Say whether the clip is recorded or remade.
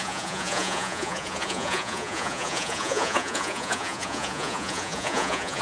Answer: remade